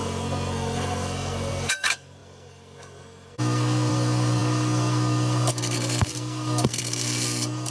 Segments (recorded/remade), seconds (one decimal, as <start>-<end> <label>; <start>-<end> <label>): 0.0-7.7 remade